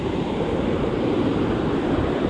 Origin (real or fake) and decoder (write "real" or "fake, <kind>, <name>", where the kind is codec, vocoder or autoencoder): fake, vocoder, BigVGAN v2